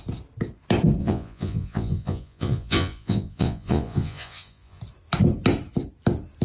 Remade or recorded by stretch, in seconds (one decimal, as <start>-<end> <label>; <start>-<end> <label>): 0.0-1.0 recorded; 1.0-4.8 remade; 4.8-6.4 recorded